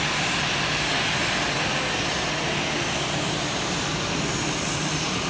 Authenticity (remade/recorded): recorded